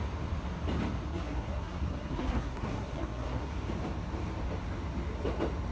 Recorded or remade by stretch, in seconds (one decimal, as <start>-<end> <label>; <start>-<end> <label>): 0.0-1.1 recorded; 1.1-3.5 remade; 3.5-5.7 recorded